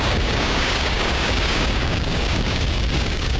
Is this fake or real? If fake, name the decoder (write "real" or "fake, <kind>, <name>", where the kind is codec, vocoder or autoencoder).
fake, codec, DAC